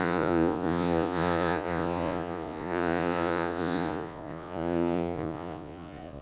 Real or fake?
fake